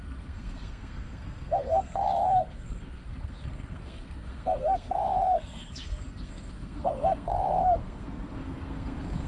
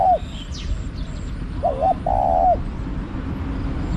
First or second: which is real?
second